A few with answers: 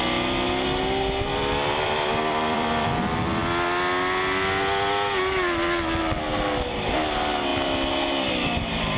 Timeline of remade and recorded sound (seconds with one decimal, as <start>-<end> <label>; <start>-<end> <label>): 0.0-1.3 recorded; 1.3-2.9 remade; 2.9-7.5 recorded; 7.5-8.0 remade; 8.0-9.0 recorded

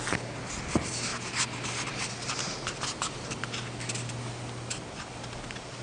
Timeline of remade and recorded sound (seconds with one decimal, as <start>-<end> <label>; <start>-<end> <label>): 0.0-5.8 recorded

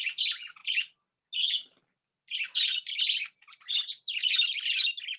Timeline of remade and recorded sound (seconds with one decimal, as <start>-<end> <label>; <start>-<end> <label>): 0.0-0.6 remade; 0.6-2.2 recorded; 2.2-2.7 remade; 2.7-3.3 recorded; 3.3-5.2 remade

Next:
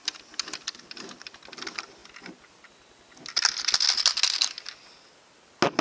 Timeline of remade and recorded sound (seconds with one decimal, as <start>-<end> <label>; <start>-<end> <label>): 0.0-5.8 recorded

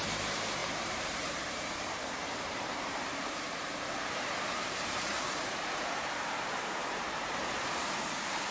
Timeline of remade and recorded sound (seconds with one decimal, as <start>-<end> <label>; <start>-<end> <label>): 0.0-8.5 remade

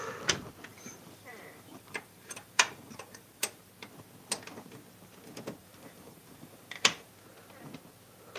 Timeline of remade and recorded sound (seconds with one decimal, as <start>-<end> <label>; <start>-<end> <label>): 0.0-0.7 recorded; 0.7-3.6 remade; 3.6-5.6 recorded; 5.6-7.1 remade; 7.1-8.4 recorded

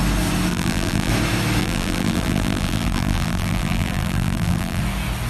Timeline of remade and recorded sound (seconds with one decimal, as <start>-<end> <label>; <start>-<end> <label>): 0.0-0.5 recorded; 0.5-1.1 remade; 1.1-1.6 recorded; 1.6-4.8 remade; 4.8-5.3 recorded

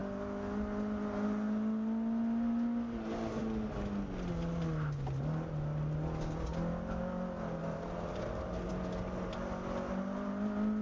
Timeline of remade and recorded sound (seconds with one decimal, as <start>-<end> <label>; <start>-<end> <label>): 0.0-7.6 recorded; 7.6-8.7 remade; 8.7-10.8 recorded